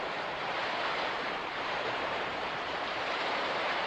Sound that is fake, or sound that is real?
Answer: fake